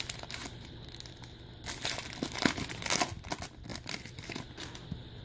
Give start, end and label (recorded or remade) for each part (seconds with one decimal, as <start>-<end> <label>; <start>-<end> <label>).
0.0-5.2 recorded